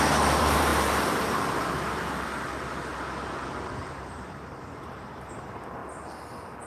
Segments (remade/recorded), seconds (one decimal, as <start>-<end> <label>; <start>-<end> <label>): 0.0-0.7 remade; 0.7-3.9 recorded; 3.9-5.8 remade; 5.8-6.7 recorded